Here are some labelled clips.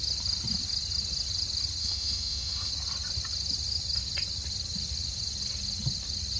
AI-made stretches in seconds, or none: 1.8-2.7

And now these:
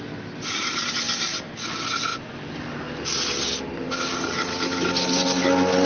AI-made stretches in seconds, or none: none